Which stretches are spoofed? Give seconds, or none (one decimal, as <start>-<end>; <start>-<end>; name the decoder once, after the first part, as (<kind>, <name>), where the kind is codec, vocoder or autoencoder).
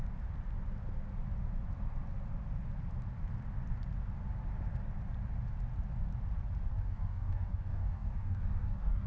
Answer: 6.7-9.1 (codec, DAC)